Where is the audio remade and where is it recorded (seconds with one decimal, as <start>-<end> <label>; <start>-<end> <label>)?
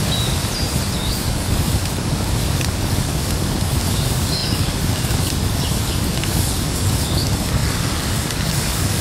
0.0-0.4 remade; 0.4-0.9 recorded; 0.9-9.0 remade